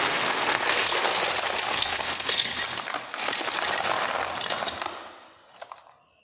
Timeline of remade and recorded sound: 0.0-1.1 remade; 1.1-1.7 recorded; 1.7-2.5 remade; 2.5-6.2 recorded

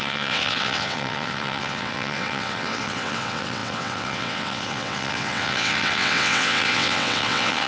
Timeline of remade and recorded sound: 0.0-7.7 remade

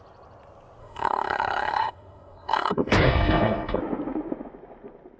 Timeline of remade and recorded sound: 0.0-0.8 recorded; 0.8-3.8 remade; 3.8-5.2 recorded

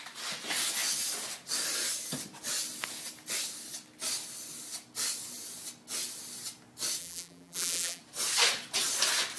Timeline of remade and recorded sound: 0.0-7.0 recorded; 7.0-8.0 remade; 8.0-9.4 recorded